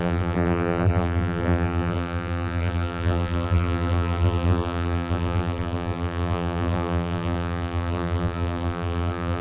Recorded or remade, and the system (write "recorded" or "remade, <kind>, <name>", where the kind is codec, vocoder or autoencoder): remade, vocoder, BigVGAN v2